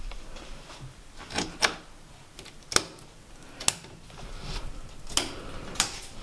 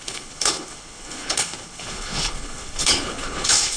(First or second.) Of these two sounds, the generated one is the second